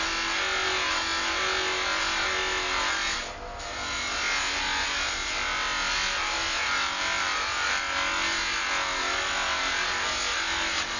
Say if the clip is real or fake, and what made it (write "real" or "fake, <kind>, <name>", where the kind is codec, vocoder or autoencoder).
real